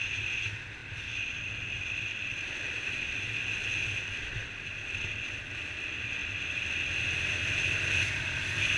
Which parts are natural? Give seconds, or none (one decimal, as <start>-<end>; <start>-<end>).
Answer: 0.0-0.8; 4.5-6.2; 8.4-8.8